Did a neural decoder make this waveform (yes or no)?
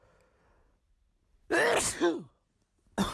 no